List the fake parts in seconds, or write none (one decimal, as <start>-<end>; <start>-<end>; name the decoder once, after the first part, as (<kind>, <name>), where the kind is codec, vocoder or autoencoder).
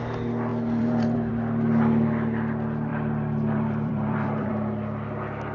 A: 0.5-1.3 (vocoder, BigVGAN v2); 2.9-4.5